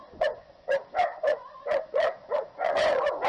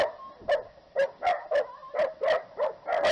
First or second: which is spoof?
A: first